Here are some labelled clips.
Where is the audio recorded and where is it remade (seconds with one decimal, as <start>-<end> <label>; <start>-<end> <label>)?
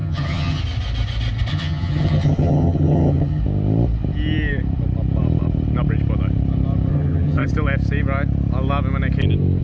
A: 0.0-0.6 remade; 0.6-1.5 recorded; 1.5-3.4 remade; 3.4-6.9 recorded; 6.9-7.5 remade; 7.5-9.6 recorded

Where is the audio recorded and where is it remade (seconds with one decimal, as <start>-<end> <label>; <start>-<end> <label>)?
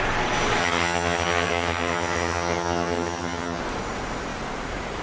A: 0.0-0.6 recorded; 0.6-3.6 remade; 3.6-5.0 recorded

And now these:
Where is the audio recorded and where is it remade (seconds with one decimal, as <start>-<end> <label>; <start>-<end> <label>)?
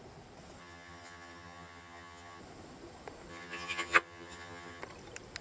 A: 0.0-0.6 recorded; 0.6-2.4 remade; 2.4-3.3 recorded; 3.3-4.8 remade; 4.8-5.4 recorded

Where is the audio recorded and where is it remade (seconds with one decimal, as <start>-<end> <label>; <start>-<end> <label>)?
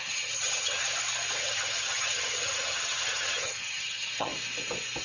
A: 0.0-0.9 remade; 0.9-1.4 recorded; 1.4-4.3 remade; 4.3-5.0 recorded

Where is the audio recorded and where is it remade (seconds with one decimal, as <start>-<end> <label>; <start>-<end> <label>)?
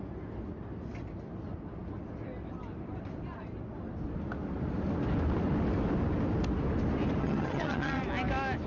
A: 0.0-7.2 recorded; 7.2-8.0 remade; 8.0-8.7 recorded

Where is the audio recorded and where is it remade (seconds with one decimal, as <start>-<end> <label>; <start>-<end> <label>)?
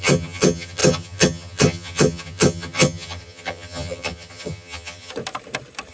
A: 0.0-5.1 remade; 5.1-5.9 recorded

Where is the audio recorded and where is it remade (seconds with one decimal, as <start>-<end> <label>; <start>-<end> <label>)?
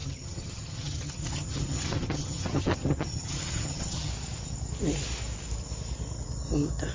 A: 0.0-4.1 remade; 4.1-6.9 recorded